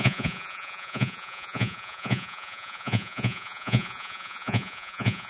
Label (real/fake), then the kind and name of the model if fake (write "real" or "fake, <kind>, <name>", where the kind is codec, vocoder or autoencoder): fake, vocoder, Vocos